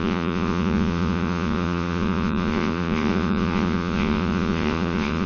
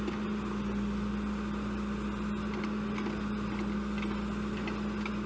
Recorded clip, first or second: second